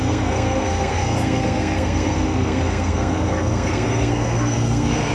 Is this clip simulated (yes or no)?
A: yes